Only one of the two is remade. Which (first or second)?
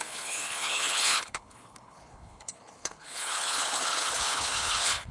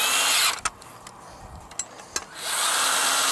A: first